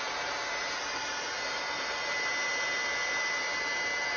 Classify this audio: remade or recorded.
recorded